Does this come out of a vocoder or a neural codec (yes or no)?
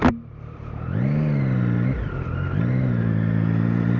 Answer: no